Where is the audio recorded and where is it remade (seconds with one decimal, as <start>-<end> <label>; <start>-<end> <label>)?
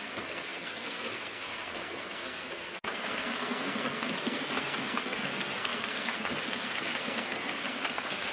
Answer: 0.0-8.3 remade